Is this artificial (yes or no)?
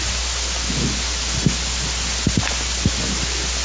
no